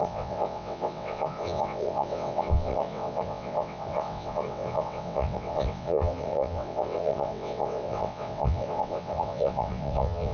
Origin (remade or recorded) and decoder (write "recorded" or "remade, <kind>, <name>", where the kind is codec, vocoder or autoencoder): remade, vocoder, WaveNeXt